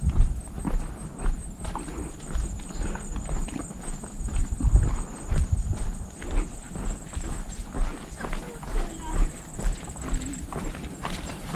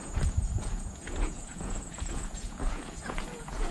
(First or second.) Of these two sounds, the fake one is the second